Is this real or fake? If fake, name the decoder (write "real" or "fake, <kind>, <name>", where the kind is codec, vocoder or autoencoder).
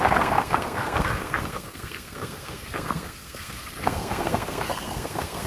fake, codec, SNAC